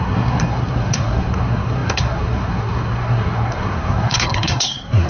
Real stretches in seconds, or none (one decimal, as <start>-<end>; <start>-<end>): none